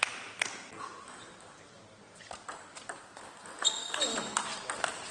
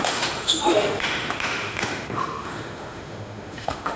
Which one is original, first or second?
first